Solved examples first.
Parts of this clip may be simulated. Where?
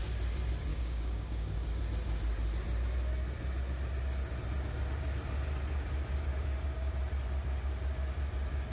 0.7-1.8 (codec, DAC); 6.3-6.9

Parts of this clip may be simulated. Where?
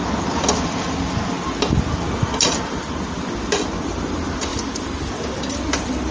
none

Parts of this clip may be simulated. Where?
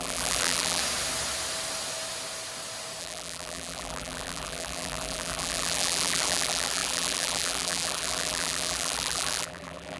0.0-0.8 (vocoder, BigVGAN v2); 3.0-10.0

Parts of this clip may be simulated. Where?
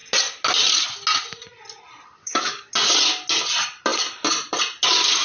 2.2-2.7 (codec, DAC)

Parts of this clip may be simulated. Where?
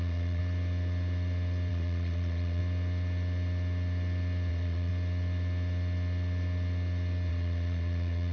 0.0-0.4 (vocoder, WaveNeXt); 1.7-2.6; 4.5-4.9; 7.3-8.3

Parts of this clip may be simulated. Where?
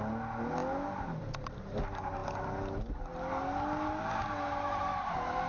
none